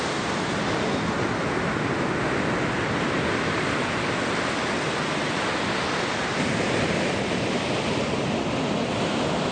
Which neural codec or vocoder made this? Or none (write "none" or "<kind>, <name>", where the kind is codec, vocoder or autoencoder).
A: none